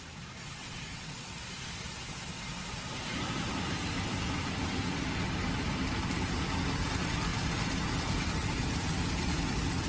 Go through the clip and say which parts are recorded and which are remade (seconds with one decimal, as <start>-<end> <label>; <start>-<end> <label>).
0.0-0.6 recorded; 0.6-1.4 remade; 1.4-9.9 recorded